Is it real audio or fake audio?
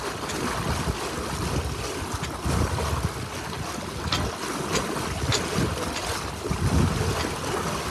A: real